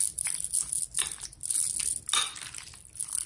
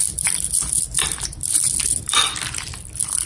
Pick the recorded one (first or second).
first